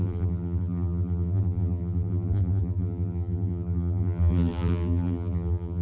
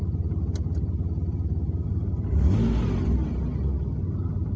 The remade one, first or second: first